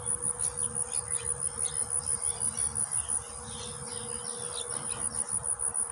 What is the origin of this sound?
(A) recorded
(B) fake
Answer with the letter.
A